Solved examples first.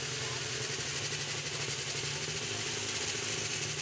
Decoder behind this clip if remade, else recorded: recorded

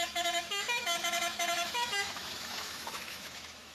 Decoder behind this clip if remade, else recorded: remade, autoencoder, DAC-VAE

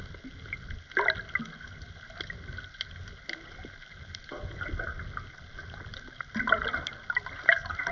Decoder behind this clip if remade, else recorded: recorded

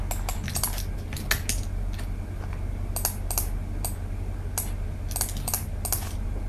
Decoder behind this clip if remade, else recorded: recorded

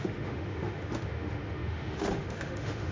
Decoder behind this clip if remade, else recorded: remade, autoencoder, DAC-VAE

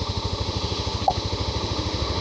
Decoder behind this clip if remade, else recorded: remade, autoencoder, DAC-VAE